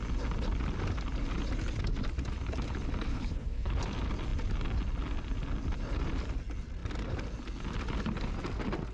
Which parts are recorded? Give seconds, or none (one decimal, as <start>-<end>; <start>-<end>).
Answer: 0.0-3.1; 3.7-8.9